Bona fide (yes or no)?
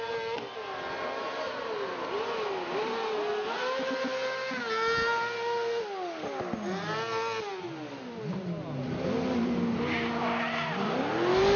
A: yes